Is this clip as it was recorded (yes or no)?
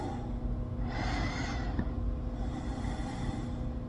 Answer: yes